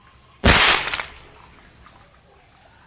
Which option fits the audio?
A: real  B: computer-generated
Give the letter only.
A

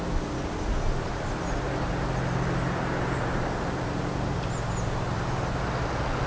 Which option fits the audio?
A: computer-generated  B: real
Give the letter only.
B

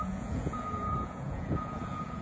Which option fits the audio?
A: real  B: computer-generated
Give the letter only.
B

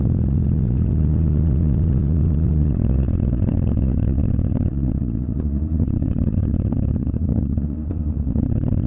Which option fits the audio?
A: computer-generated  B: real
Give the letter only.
A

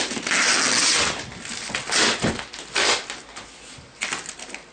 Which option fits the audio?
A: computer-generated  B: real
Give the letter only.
B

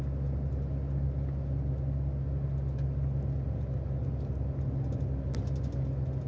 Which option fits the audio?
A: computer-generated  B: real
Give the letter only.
B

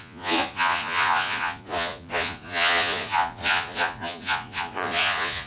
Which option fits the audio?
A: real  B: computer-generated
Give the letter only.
B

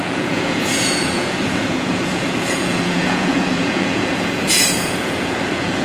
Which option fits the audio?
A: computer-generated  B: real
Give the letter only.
A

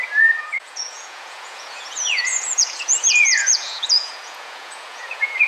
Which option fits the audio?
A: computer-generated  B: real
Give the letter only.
A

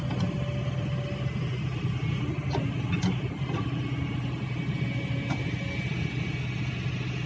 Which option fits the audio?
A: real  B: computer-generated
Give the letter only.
A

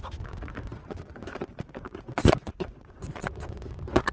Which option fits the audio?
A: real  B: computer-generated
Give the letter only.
B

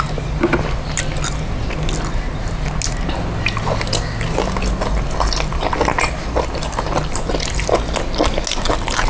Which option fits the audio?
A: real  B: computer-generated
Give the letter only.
A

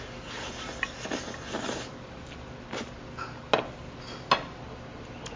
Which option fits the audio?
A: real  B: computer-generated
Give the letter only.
A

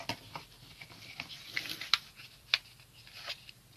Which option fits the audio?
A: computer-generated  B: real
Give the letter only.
B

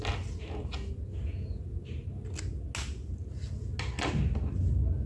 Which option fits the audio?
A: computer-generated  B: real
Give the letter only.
B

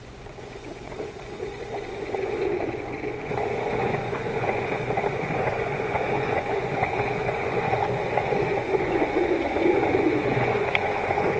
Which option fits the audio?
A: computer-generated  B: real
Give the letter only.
A